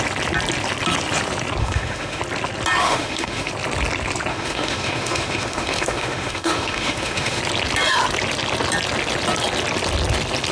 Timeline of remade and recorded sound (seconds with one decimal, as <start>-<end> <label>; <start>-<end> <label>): 0.0-1.6 recorded; 1.6-2.2 remade; 2.2-2.8 recorded; 2.8-3.5 remade; 3.5-4.3 recorded; 4.3-7.4 remade; 7.4-10.5 recorded